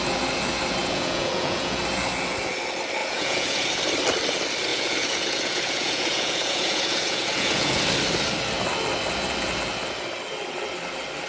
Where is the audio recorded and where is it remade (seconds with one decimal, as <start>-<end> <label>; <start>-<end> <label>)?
0.0-0.8 recorded; 0.8-1.8 remade; 1.8-3.0 recorded; 3.0-3.8 remade; 3.8-4.7 recorded; 4.7-7.8 remade; 7.8-11.3 recorded